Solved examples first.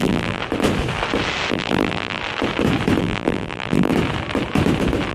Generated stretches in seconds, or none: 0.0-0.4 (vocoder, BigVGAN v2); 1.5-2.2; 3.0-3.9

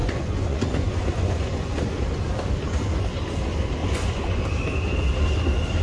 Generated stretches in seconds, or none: 0.0-1.9 (vocoder, Vocos); 3.8-4.4

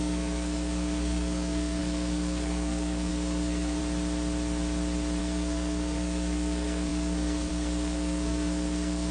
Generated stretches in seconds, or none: 0.0-3.8 (codec, SNAC); 5.2-9.1

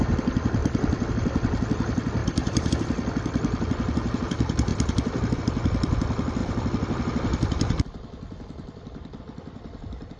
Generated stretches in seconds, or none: 0.6-1.1 (vocoder, BigVGAN v2); 2.2-2.7; 4.7-5.4; 6.4-9.2

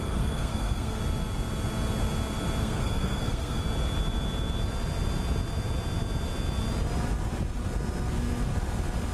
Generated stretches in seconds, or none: 0.0-1.0 (codec, SNAC); 2.6-3.6

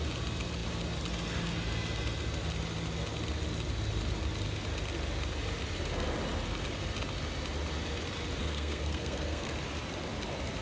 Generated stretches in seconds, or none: 8.4-9.5 (codec, SNAC)

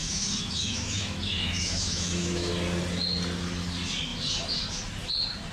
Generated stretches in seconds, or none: 0.0-2.5 (autoencoder, DAC-VAE)